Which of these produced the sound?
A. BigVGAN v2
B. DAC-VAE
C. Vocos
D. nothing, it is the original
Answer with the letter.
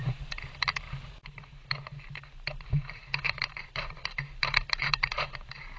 A